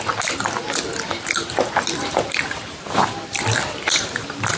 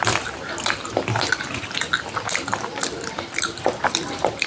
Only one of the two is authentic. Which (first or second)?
first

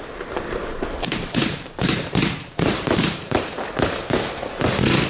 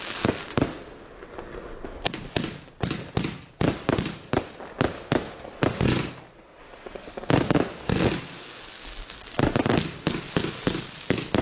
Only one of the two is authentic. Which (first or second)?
second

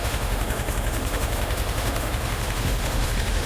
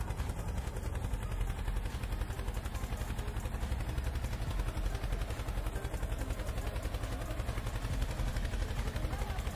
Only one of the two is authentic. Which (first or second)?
second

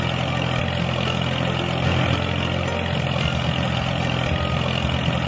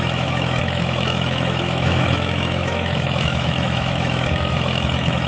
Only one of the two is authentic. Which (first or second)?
first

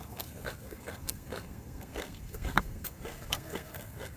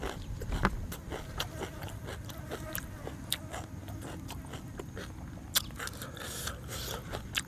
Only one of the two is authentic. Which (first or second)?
second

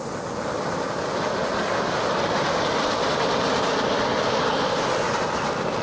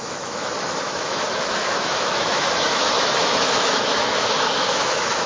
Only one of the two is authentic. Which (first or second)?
first